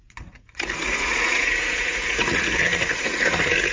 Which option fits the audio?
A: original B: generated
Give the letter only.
B